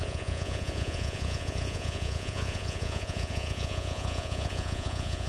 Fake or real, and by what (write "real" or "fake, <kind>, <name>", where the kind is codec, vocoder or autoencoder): fake, vocoder, Vocos